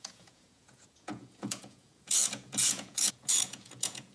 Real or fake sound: fake